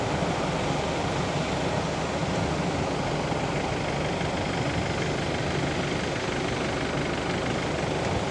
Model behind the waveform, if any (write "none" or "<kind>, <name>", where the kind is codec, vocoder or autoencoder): none